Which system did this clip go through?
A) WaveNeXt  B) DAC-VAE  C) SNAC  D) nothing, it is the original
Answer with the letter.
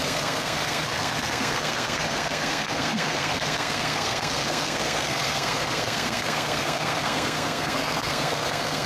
C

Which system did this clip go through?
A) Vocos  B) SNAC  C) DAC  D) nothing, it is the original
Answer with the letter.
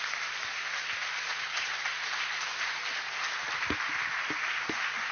D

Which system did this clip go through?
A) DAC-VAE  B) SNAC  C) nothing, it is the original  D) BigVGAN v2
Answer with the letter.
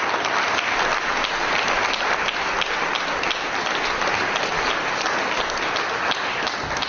C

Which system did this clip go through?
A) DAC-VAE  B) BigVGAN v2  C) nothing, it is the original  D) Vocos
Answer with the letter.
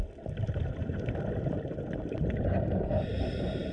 B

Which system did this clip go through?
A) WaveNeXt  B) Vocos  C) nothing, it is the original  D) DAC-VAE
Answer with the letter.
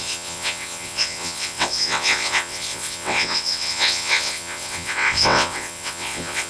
A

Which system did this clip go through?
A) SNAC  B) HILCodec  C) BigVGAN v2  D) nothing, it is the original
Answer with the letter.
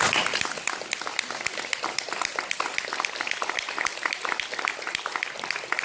D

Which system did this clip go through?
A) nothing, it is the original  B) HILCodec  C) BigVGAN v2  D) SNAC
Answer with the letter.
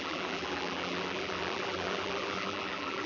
C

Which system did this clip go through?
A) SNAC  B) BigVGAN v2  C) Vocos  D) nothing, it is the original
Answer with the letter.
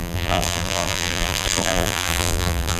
B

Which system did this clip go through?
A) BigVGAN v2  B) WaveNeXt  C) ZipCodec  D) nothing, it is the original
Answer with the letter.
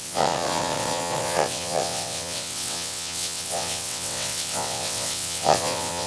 B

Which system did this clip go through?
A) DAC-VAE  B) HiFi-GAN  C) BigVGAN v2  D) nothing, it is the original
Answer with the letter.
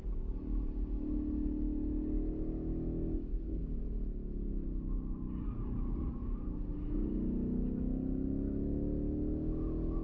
D